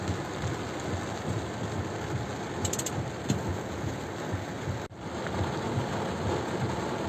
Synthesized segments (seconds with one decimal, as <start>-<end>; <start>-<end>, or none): 3.5-4.0